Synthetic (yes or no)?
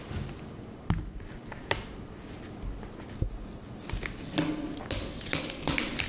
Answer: no